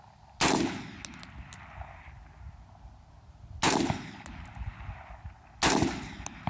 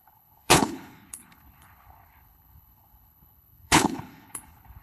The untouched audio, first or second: first